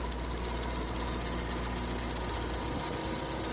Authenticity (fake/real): real